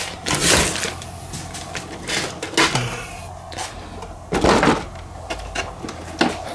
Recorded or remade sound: recorded